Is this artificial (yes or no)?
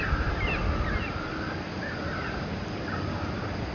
no